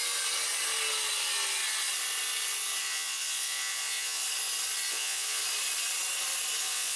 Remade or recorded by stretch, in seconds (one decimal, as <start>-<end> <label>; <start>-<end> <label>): 0.0-2.8 recorded; 2.8-4.2 remade; 4.2-4.9 recorded; 4.9-5.4 remade; 5.4-6.6 recorded; 6.6-7.0 remade